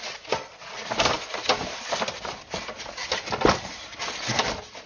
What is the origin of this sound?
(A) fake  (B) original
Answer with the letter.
B